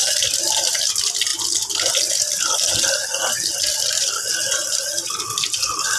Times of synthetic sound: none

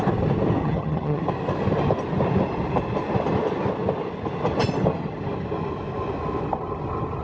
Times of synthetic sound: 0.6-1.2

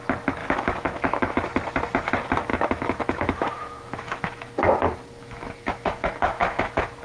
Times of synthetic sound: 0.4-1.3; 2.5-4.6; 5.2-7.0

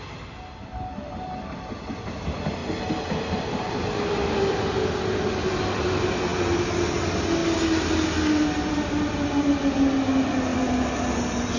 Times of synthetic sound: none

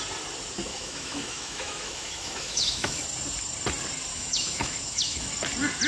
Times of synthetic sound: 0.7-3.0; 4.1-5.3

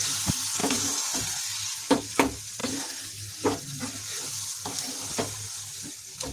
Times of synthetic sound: none

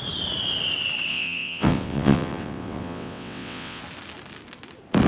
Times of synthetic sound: 1.1-3.8

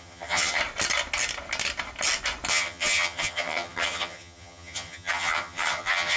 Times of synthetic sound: 0.0-0.6; 2.5-6.2